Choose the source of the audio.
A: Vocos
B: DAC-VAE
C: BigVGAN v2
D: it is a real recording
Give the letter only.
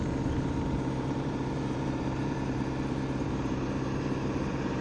C